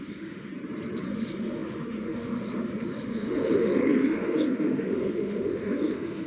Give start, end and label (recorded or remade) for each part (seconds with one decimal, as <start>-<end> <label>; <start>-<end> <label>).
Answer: 0.0-0.5 remade; 0.5-1.1 recorded; 1.1-6.3 remade